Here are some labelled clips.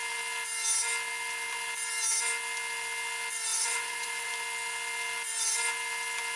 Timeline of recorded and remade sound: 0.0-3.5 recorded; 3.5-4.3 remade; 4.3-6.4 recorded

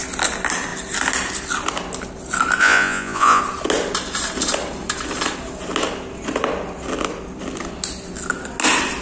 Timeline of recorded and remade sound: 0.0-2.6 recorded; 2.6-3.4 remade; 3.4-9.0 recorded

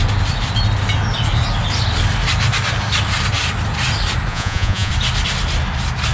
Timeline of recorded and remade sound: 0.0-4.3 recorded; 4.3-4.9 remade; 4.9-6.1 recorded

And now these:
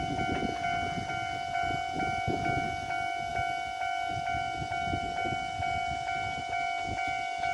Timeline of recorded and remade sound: 0.0-7.5 recorded

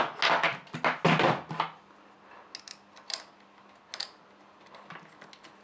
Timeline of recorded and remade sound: 0.0-5.6 recorded